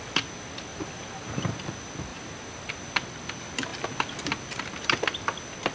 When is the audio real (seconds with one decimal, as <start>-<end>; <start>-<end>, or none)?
0.0-0.7; 1.6-2.1; 2.6-5.7